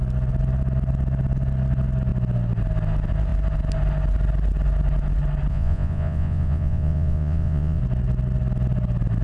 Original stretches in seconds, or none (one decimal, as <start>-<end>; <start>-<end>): 0.0-5.5; 7.8-9.2